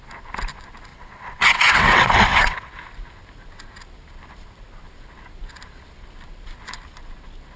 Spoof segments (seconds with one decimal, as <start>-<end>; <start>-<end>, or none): 0.9-2.8